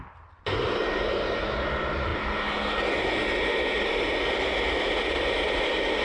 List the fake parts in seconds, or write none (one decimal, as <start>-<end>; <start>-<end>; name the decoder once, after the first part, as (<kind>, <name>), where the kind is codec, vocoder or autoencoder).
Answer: none